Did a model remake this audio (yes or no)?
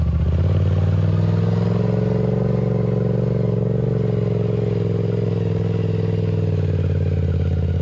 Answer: no